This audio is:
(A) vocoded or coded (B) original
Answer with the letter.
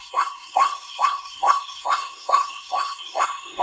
A